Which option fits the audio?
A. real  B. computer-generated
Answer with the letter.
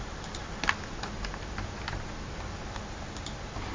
A